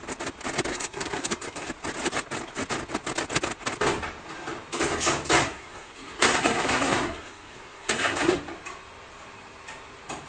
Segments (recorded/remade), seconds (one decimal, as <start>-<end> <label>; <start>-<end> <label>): 0.0-0.7 recorded; 0.7-1.7 remade; 1.7-5.4 recorded; 5.4-8.4 remade; 8.4-10.3 recorded